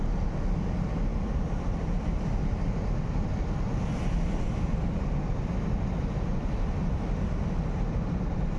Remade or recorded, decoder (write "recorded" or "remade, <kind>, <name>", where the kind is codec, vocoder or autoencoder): recorded